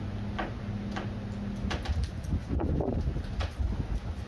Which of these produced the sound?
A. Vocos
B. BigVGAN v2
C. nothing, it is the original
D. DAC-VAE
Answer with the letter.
C